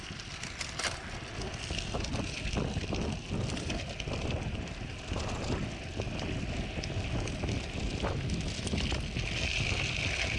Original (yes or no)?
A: yes